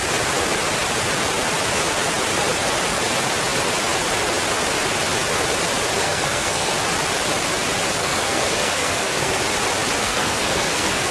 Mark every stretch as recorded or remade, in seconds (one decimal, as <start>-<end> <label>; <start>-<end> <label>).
0.0-6.0 recorded; 6.0-6.7 remade; 6.7-8.0 recorded; 8.0-9.4 remade; 9.4-10.0 recorded; 10.0-11.1 remade